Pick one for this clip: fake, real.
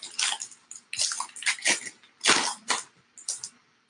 real